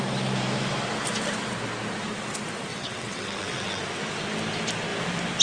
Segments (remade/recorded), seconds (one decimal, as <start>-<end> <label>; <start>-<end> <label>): 0.0-2.7 recorded; 2.7-3.8 remade; 3.8-5.4 recorded